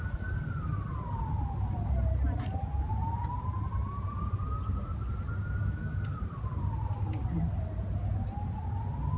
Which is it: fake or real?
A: real